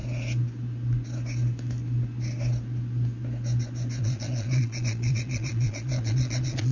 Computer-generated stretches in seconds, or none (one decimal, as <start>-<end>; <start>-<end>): 4.0-6.7